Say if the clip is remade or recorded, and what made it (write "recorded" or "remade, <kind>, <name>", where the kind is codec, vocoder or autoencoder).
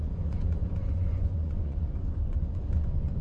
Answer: remade, vocoder, Vocos